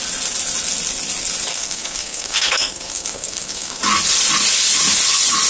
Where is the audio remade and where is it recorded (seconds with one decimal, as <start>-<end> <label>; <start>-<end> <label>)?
0.0-1.5 recorded; 1.5-3.8 remade; 3.8-5.5 recorded